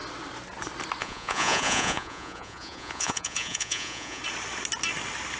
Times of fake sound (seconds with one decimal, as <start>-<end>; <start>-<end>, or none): 1.0-4.2